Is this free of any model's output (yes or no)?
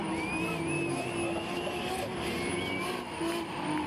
yes